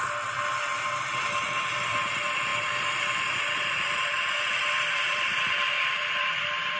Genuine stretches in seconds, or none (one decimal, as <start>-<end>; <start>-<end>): 0.0-2.5